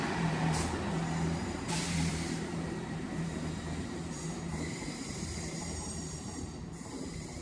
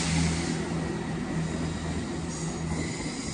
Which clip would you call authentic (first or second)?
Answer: second